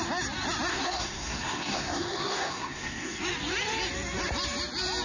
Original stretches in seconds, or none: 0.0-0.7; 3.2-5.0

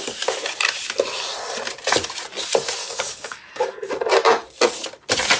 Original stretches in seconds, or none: 0.0-2.8; 3.9-5.4

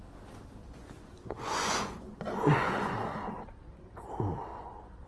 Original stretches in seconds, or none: 0.0-0.6; 3.7-4.5

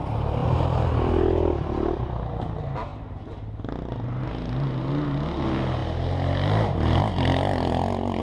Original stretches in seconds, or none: 0.0-0.4; 2.3-2.9; 4.2-8.2

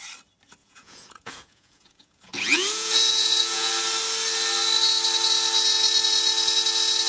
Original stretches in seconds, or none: 0.0-0.6; 3.7-7.1

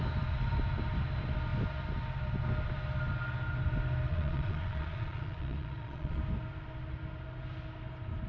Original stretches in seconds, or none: 0.0-4.1; 6.2-8.3